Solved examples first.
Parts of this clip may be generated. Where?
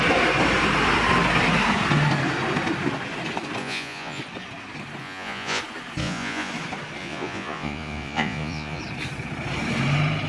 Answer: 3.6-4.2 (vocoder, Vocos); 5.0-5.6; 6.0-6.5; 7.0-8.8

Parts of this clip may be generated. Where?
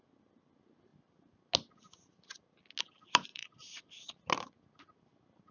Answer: 3.3-3.9 (vocoder, Vocos)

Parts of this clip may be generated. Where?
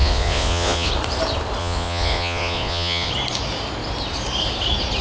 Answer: 0.0-0.9 (vocoder, Vocos); 1.6-3.1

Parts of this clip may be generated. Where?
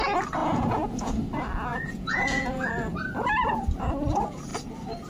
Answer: 0.4-1.1 (vocoder, Vocos); 1.7-2.7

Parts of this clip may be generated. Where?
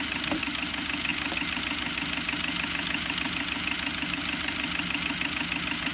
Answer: none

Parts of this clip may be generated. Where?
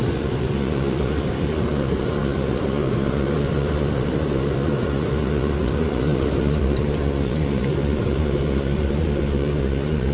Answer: 0.0-10.1 (vocoder, Vocos)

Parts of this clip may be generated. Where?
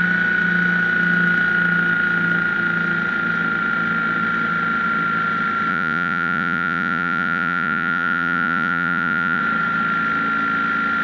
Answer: 5.7-9.4 (vocoder, Vocos)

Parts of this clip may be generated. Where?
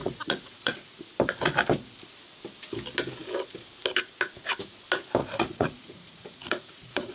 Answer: 0.0-1.0 (vocoder, Vocos); 5.2-7.1